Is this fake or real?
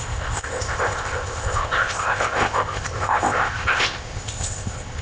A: fake